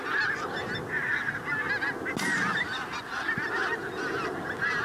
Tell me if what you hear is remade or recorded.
recorded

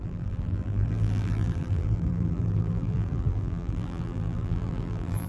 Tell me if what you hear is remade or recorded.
remade